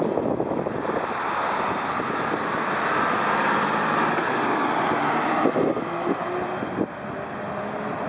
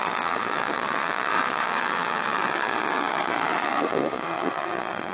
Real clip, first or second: first